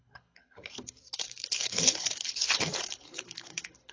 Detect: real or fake fake